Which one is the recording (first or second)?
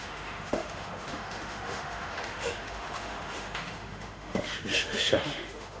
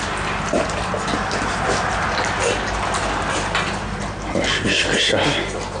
second